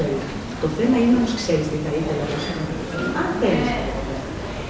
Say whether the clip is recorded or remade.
recorded